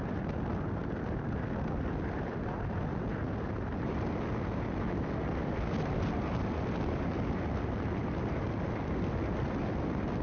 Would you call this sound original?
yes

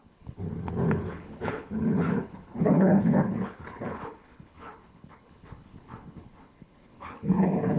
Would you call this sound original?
no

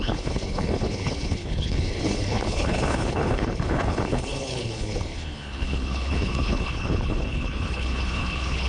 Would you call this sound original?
no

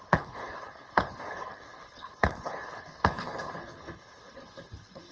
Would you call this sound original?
no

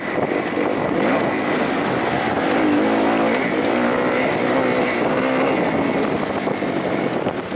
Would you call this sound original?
yes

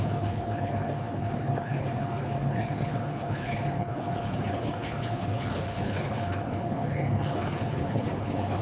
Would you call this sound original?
no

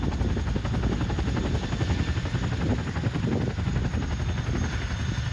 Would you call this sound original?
yes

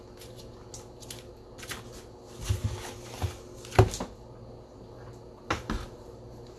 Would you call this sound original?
yes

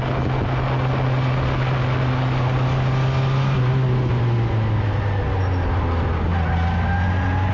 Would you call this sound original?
yes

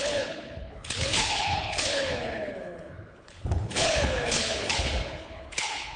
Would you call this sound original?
no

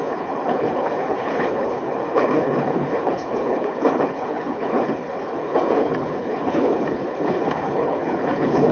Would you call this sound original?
no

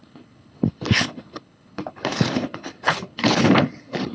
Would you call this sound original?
no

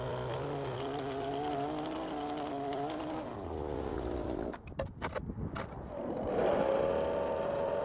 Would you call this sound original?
yes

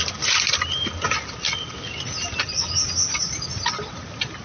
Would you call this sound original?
yes